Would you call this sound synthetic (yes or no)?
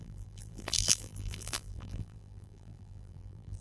yes